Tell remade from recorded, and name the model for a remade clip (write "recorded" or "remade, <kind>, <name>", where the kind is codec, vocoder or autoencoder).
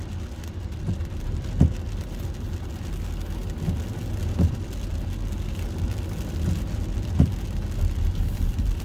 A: recorded